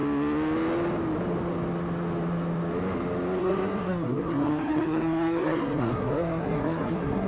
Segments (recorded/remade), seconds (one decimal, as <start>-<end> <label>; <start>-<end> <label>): 0.0-3.4 recorded; 3.4-7.3 remade

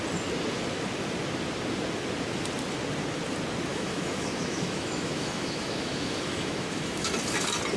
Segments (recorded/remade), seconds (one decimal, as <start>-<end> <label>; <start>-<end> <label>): 0.0-3.7 recorded; 3.7-7.1 remade; 7.1-7.8 recorded

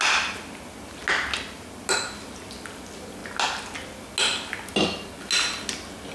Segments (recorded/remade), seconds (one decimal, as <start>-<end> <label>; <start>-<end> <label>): 0.0-6.1 recorded

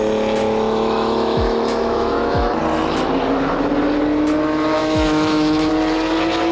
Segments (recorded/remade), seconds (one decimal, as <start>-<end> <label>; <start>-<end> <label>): 0.0-0.4 recorded; 0.4-2.6 remade; 2.6-4.8 recorded; 4.8-5.7 remade; 5.7-6.5 recorded